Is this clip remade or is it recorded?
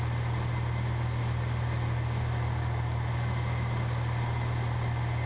recorded